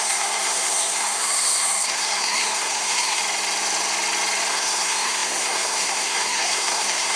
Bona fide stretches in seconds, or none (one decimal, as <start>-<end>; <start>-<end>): 3.2-4.5